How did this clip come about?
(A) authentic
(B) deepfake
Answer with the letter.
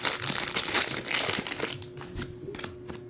A